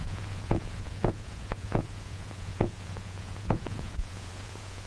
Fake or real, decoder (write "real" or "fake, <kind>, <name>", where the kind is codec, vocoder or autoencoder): fake, vocoder, Vocos